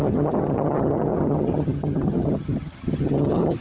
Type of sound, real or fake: fake